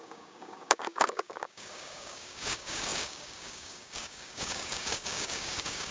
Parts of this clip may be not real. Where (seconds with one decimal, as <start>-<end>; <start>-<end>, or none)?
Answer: 0.0-5.9